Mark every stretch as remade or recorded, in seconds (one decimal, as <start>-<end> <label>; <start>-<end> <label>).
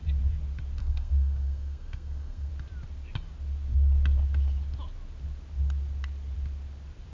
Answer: 0.0-0.8 recorded; 0.8-2.5 remade; 2.5-7.1 recorded